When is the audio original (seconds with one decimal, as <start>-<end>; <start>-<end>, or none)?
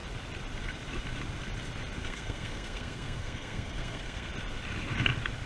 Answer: 0.0-2.0; 4.3-5.5